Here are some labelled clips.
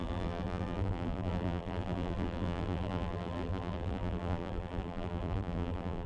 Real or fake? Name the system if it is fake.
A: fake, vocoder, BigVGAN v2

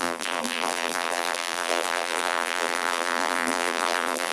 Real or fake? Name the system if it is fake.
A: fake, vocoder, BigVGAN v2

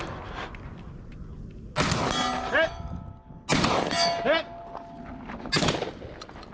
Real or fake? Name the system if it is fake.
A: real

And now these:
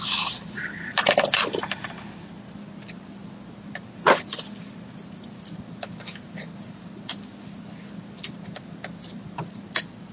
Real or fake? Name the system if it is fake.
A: fake, vocoder, BigVGAN v2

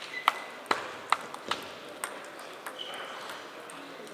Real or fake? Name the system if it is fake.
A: real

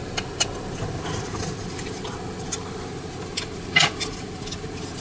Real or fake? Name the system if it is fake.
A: real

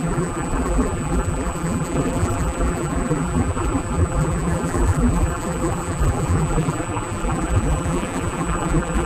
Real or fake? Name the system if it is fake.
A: fake, vocoder, BigVGAN v2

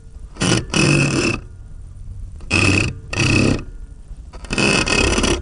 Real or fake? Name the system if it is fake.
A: fake, vocoder, BigVGAN v2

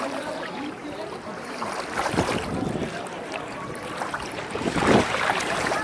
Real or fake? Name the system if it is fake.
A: fake, vocoder, BigVGAN v2